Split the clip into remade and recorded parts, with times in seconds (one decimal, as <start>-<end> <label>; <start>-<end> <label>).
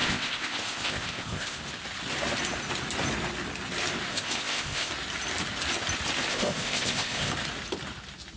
0.0-1.6 remade; 1.6-4.1 recorded; 4.1-4.9 remade; 4.9-6.3 recorded; 6.3-7.3 remade; 7.3-8.4 recorded